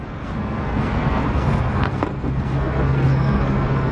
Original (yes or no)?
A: no